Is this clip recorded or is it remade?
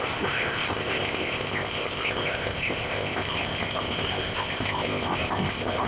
remade